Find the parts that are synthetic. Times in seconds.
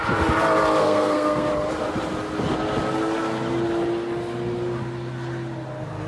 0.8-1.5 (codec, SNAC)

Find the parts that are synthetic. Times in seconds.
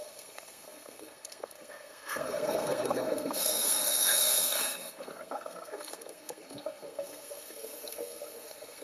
0.0-8.8 (codec, SNAC)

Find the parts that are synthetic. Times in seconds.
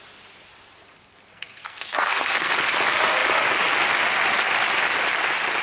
1.3-2.5 (codec, SNAC)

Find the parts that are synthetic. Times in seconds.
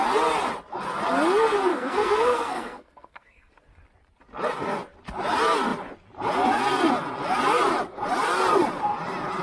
1.7-3.5 (codec, SNAC)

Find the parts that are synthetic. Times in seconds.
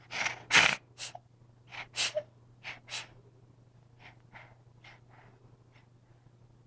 none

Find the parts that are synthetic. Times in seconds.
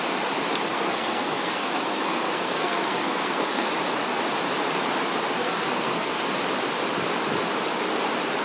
0.7-3.7 (codec, SNAC); 5.4-6.2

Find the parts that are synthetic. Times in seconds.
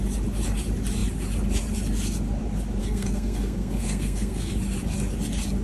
2.8-4.5 (codec, SNAC)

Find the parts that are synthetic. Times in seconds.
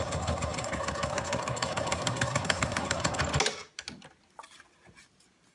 0.0-3.2 (codec, SNAC)